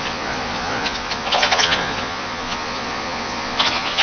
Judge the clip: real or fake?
fake